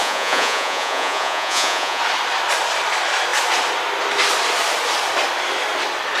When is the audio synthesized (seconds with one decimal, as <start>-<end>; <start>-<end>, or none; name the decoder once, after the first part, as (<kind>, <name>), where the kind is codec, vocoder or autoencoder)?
0.0-2.0 (vocoder, Vocos)

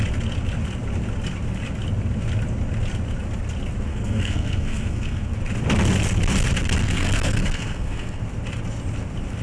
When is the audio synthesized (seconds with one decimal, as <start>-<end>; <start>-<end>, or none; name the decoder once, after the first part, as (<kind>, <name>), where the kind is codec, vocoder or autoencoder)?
3.9-5.3 (codec, SNAC); 6.8-8.2

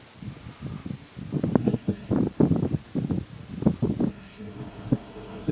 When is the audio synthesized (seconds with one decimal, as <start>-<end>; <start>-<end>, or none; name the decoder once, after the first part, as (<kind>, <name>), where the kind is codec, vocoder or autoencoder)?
1.6-2.1 (codec, SNAC); 4.1-5.5

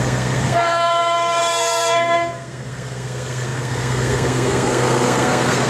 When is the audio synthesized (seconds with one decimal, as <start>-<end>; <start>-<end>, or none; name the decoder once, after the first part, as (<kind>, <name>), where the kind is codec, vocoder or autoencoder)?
0.0-5.7 (codec, SNAC)

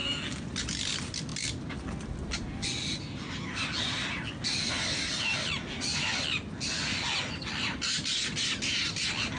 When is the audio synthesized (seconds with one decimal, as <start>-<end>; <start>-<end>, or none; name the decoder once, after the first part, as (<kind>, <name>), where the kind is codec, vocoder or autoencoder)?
none

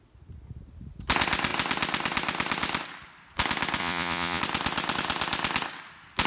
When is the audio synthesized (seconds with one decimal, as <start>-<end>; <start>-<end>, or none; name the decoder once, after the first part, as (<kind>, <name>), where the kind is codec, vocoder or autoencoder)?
3.8-4.4 (vocoder, Vocos)

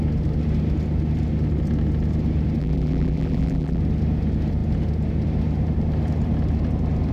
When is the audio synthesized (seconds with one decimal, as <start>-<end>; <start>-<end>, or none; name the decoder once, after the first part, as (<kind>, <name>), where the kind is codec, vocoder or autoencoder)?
2.6-3.8 (vocoder, BigVGAN v2)